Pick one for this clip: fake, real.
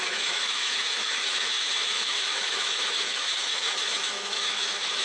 fake